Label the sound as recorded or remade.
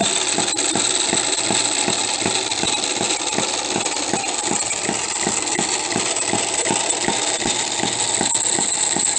recorded